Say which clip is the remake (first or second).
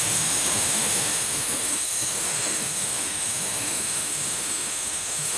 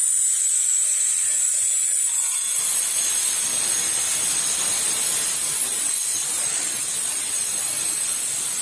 first